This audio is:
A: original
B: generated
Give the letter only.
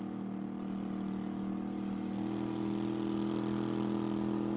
A